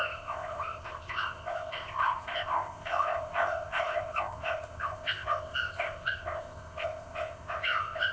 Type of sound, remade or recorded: remade